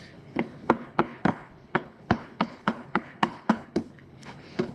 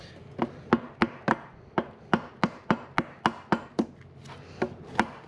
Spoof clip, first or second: first